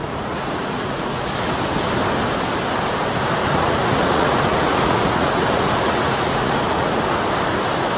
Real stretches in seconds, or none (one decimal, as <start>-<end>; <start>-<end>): 1.3-3.4; 7.0-8.0